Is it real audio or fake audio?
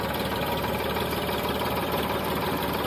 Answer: fake